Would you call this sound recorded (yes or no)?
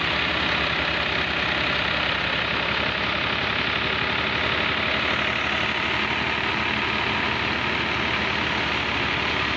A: yes